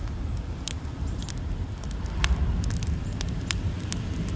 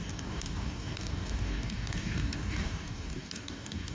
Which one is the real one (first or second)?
first